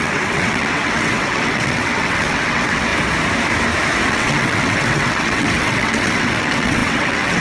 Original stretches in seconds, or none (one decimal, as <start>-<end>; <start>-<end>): 2.9-4.1